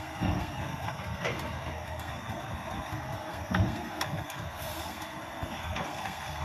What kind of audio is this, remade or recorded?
remade